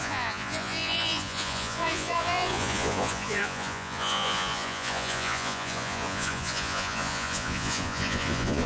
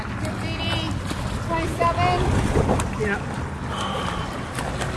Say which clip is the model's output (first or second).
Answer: first